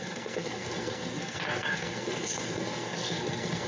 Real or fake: fake